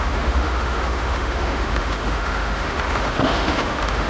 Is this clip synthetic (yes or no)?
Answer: yes